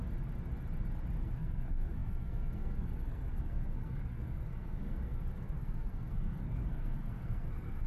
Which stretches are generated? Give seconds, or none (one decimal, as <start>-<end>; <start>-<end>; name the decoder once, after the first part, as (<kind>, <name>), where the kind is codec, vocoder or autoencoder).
1.2-7.9 (codec, SNAC)